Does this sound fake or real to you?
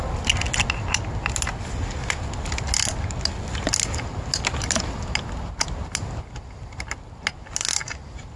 real